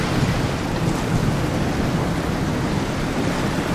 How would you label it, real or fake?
real